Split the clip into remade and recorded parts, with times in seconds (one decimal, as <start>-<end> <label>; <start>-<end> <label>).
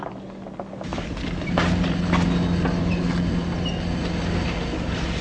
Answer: 0.0-5.2 recorded